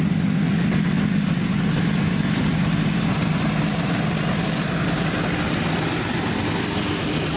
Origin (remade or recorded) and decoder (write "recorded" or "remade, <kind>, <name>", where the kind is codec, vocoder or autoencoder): recorded